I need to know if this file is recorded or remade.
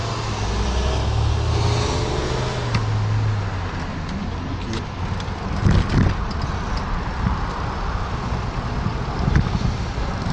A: recorded